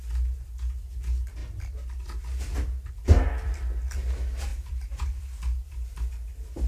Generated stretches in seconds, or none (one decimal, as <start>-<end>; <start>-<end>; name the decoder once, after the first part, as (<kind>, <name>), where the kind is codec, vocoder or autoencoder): 4.5-5.2 (vocoder, BigVGAN v2)